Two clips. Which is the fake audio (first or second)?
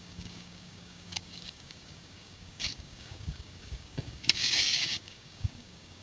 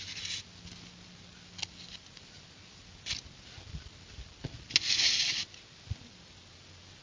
first